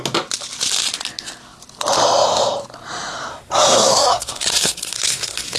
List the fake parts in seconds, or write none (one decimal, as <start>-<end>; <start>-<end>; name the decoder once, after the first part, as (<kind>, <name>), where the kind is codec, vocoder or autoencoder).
3.3-5.6 (codec, SNAC)